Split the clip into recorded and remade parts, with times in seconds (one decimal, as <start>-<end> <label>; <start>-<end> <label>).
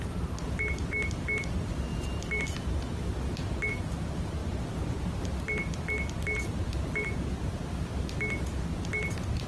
0.0-9.5 recorded